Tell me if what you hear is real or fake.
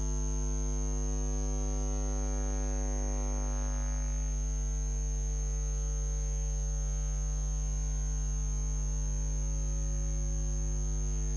real